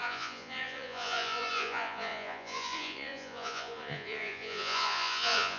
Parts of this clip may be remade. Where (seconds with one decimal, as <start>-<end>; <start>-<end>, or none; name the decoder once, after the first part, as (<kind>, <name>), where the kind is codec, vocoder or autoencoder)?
0.0-5.6 (vocoder, Vocos)

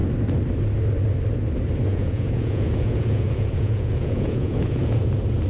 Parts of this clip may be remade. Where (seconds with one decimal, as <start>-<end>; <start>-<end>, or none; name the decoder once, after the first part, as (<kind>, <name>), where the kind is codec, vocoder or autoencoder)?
1.9-5.1 (vocoder, Vocos)